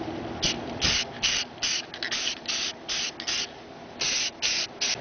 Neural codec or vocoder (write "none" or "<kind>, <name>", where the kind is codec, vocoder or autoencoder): none